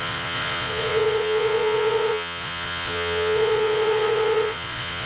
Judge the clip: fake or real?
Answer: fake